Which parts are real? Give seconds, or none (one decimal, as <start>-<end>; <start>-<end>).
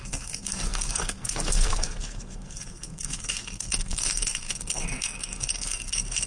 none